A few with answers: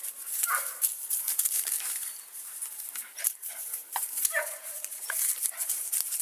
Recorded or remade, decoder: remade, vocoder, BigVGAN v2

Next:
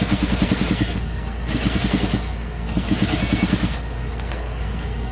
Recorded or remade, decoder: remade, codec, SNAC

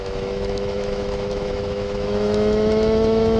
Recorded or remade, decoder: remade, autoencoder, DAC-VAE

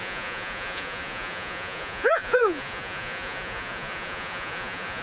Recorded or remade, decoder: remade, vocoder, Vocos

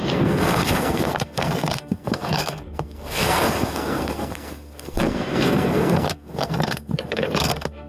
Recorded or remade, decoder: remade, codec, SNAC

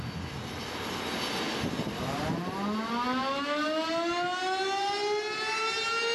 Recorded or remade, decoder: recorded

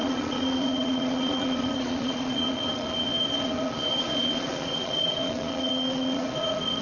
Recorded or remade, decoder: remade, vocoder, Vocos